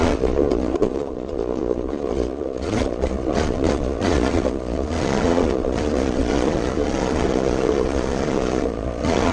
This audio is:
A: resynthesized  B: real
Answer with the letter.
A